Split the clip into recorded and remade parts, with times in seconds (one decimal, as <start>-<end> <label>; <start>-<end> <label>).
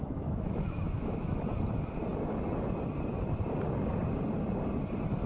0.0-1.4 remade; 1.4-5.3 recorded